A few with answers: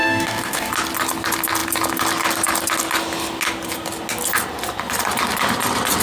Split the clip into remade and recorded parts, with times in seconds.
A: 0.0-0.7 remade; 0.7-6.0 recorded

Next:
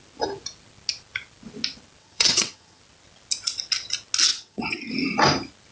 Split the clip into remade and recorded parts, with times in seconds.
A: 0.0-2.0 recorded; 2.0-2.8 remade; 2.8-4.3 recorded; 4.3-4.9 remade; 4.9-5.7 recorded

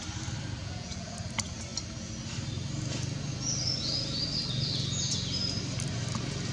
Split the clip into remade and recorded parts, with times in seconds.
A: 0.0-0.6 recorded; 0.6-1.1 remade; 1.1-6.5 recorded

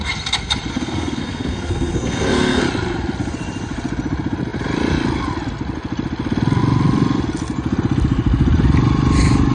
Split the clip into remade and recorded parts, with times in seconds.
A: 0.0-0.7 recorded; 0.7-2.6 remade; 2.6-9.5 recorded

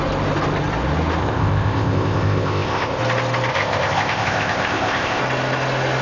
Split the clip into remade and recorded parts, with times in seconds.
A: 0.0-1.2 recorded; 1.2-3.0 remade; 3.0-3.5 recorded; 3.5-5.2 remade; 5.2-6.0 recorded

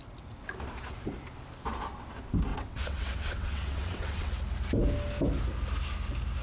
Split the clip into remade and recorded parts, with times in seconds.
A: 0.0-2.5 recorded; 2.5-4.3 remade; 4.3-6.4 recorded

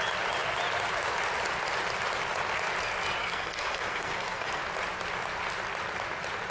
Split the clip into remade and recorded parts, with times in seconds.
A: 0.0-3.2 recorded; 3.2-4.6 remade; 4.6-6.5 recorded

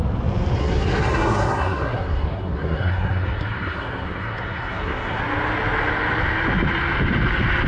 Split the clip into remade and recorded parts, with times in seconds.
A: 0.0-0.6 recorded; 0.6-5.2 remade; 5.2-7.7 recorded